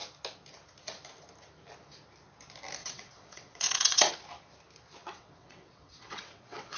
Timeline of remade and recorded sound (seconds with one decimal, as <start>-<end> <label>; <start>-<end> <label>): 0.0-2.8 recorded; 2.8-4.1 remade; 4.1-5.0 recorded; 5.0-6.8 remade